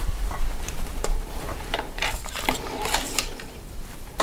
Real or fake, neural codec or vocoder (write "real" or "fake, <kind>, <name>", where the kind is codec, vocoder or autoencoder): fake, vocoder, BigVGAN v2